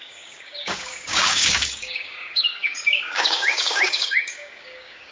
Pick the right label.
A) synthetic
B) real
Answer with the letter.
A